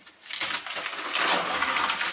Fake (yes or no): no